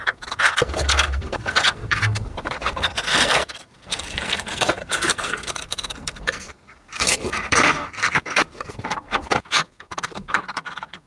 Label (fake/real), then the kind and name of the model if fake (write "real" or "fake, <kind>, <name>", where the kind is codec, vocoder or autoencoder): fake, codec, SNAC